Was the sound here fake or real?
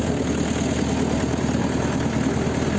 real